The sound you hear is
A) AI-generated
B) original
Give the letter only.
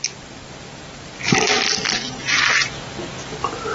B